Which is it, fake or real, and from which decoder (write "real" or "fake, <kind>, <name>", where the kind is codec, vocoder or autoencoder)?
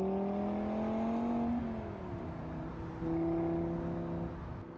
real